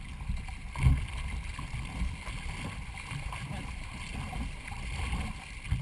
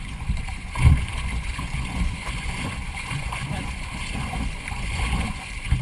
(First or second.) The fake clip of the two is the second